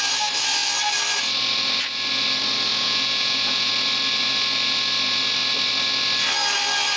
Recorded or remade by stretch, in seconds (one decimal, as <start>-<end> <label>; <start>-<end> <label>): 0.0-2.7 recorded; 2.7-3.7 remade; 3.7-7.0 recorded